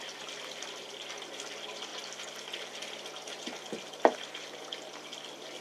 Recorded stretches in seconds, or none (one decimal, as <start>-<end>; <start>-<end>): 0.0-5.6